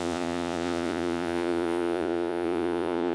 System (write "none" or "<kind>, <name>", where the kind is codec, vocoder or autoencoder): vocoder, Vocos